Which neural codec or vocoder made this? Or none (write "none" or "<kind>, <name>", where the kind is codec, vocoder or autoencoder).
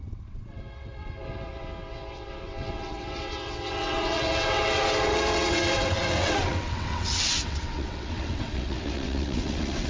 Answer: vocoder, WaveNeXt